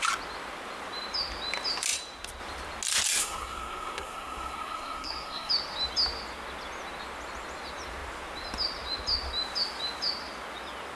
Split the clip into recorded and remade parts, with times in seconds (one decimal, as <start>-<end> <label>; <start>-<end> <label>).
0.0-3.2 recorded; 3.2-5.5 remade; 5.5-11.0 recorded